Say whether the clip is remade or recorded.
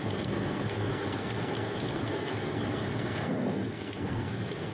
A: remade